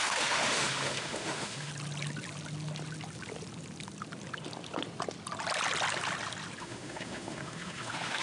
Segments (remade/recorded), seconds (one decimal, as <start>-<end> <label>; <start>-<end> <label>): 0.0-1.7 remade; 1.7-6.6 recorded; 6.6-8.2 remade